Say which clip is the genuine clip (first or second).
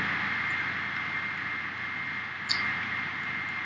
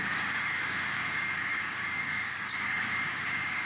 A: first